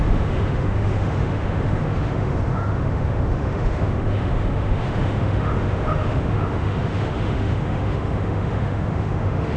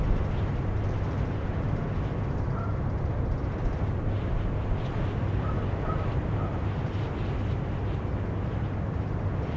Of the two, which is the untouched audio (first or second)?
second